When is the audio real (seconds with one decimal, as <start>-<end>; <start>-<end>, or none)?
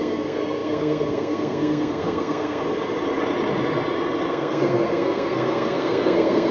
2.6-4.3